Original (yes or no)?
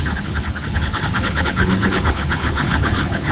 no